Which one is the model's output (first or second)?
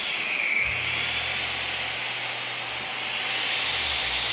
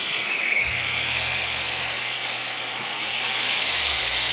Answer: second